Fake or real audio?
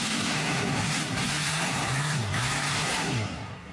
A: fake